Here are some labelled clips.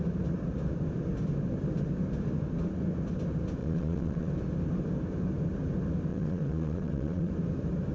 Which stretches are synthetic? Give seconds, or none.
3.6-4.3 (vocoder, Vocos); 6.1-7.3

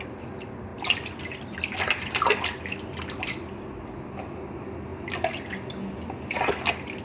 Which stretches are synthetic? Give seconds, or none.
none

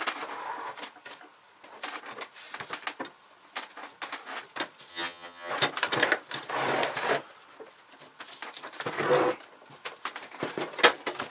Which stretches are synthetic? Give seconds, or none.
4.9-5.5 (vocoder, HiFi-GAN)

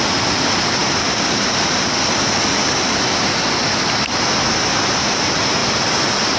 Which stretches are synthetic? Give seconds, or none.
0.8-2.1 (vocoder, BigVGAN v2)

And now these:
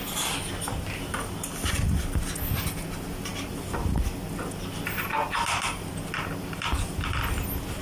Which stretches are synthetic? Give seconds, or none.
none

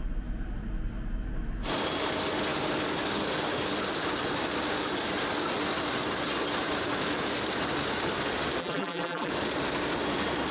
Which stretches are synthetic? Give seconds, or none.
8.6-9.3 (vocoder, BigVGAN v2)

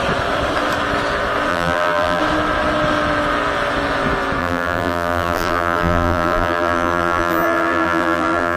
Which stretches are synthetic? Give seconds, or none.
1.5-2.2 (vocoder, BigVGAN v2); 4.4-8.6

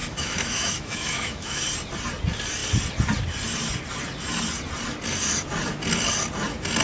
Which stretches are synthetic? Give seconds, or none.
0.0-1.6 (autoencoder, DAC-VAE)